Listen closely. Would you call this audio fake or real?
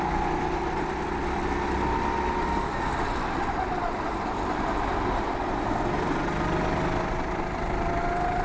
real